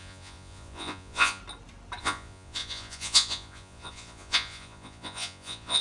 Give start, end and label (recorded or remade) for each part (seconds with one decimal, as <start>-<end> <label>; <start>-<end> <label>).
0.0-1.4 remade; 1.4-2.0 recorded; 2.0-5.8 remade